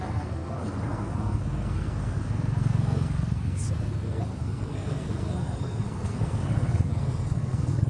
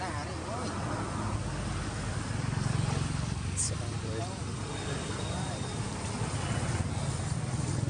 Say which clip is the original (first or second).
second